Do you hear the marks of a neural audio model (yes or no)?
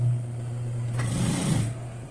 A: no